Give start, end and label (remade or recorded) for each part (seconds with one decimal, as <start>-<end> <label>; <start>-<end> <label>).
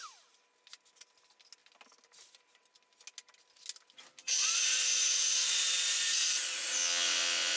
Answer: 0.0-6.8 recorded; 6.8-7.6 remade